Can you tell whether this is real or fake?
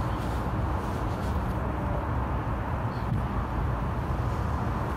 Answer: real